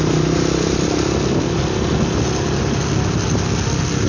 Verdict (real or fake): real